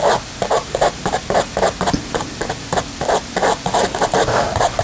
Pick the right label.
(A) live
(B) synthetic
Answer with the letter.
A